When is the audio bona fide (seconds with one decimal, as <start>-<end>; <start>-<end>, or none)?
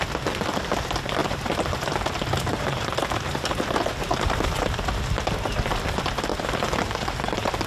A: 0.0-1.2; 4.8-6.3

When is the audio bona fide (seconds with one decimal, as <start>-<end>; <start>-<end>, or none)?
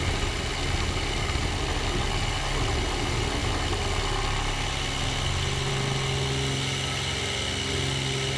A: 0.0-8.4